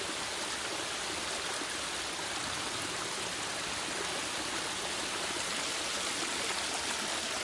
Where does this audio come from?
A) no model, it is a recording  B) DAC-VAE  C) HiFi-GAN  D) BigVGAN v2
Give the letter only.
A